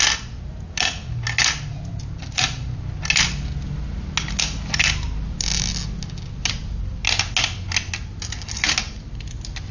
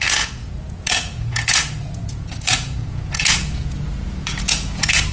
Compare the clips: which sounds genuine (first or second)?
first